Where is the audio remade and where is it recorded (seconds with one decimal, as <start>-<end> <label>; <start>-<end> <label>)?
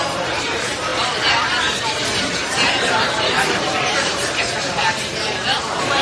0.0-0.9 remade; 0.9-1.6 recorded; 1.6-6.0 remade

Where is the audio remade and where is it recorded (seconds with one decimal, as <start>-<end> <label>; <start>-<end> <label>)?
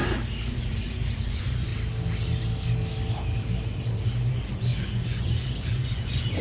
0.0-0.6 recorded; 0.6-1.7 remade; 1.7-4.3 recorded; 4.3-6.4 remade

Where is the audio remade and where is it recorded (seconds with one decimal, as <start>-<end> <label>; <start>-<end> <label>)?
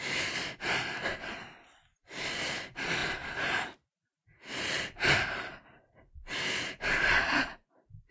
0.0-3.0 recorded; 3.0-8.1 remade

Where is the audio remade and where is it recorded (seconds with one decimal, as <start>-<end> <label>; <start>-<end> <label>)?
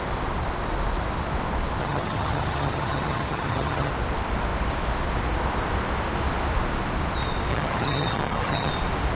0.0-1.8 recorded; 1.8-3.9 remade; 3.9-7.5 recorded; 7.5-8.7 remade; 8.7-9.1 recorded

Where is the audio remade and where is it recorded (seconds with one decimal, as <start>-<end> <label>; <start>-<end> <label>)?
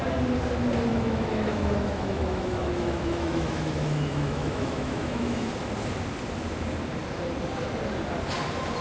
0.0-0.9 recorded; 0.9-5.5 remade; 5.5-8.8 recorded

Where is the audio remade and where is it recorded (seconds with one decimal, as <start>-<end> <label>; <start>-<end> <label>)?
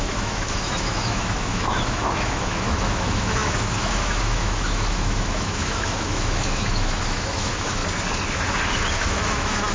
0.0-7.8 remade; 7.8-9.0 recorded; 9.0-9.7 remade